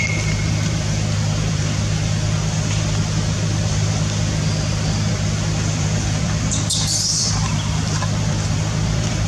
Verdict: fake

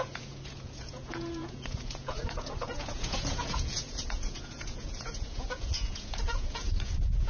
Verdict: fake